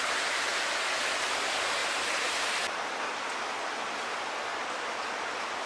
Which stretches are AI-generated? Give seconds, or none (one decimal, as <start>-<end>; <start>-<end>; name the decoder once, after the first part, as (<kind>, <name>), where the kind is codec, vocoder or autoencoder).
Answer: none